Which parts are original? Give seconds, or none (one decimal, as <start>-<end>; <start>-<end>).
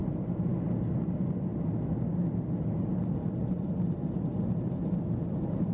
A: 0.0-5.7